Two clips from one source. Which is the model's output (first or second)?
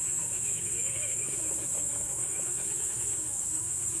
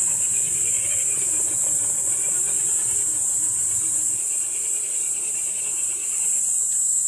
first